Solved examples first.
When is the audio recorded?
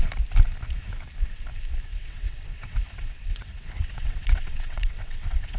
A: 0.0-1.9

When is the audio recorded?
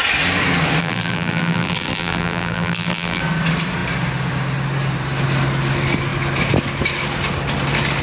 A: 0.0-0.8; 3.2-8.0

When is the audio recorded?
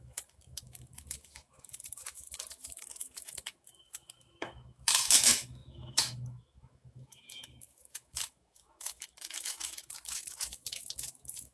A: none